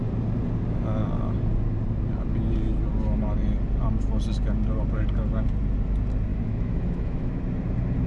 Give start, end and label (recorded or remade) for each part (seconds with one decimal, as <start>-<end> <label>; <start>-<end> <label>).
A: 0.0-6.3 recorded; 6.3-7.4 remade; 7.4-8.1 recorded